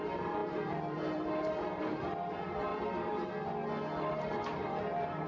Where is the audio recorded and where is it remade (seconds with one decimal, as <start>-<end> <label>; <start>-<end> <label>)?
0.0-2.7 remade; 2.7-4.1 recorded; 4.1-5.3 remade